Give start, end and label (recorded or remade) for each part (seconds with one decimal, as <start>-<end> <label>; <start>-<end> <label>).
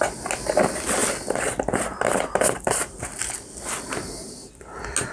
0.0-5.1 recorded